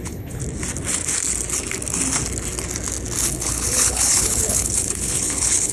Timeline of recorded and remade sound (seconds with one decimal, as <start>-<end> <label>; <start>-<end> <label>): 0.0-0.4 remade; 0.4-3.3 recorded; 3.3-5.7 remade